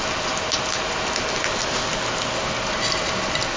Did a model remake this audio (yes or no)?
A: no